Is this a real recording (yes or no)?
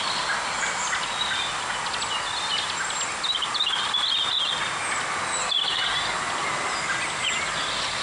yes